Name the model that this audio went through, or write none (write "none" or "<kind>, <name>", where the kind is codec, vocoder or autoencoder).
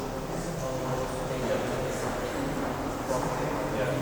none